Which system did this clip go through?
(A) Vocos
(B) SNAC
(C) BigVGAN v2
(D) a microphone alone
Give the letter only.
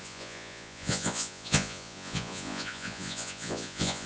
A